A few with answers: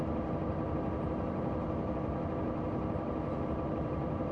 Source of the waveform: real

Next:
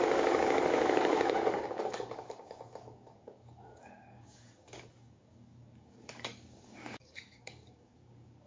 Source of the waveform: fake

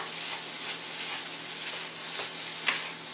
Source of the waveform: real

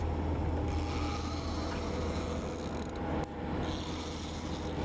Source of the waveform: real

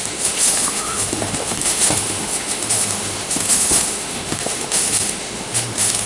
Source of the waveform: fake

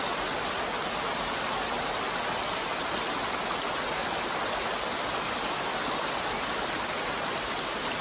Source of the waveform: real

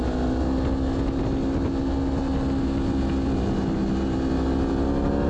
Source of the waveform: real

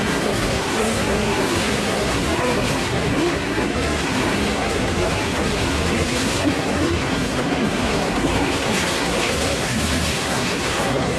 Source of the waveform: fake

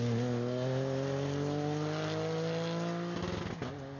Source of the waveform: real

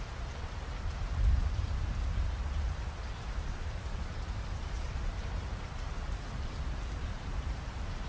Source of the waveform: fake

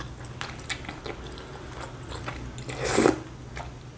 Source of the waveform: real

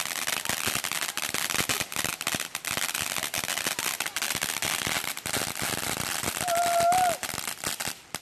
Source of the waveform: real